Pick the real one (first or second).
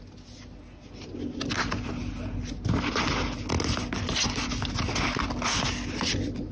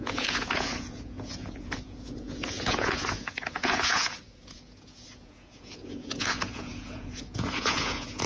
first